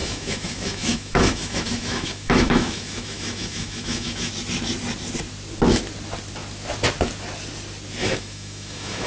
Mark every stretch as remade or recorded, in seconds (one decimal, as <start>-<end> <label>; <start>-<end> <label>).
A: 0.0-4.3 remade; 4.3-8.0 recorded; 8.0-9.1 remade